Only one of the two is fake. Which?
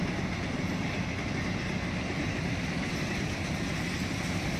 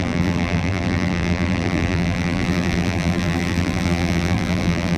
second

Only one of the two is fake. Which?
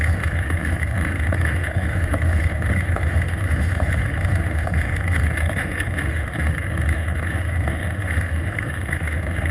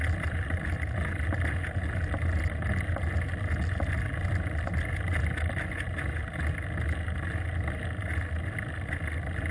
first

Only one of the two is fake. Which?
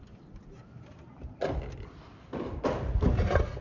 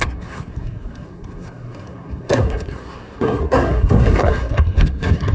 second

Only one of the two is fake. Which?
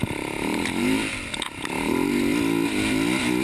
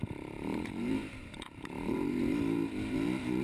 second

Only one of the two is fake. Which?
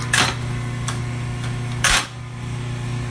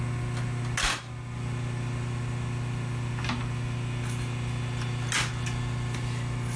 first